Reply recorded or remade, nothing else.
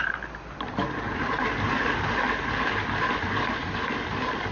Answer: recorded